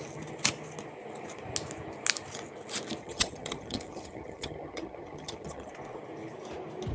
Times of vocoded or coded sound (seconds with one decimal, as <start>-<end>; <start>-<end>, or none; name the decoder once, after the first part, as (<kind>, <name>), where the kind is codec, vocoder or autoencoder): 3.0-5.7 (vocoder, HiFi-GAN)